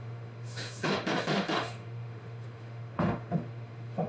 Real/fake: fake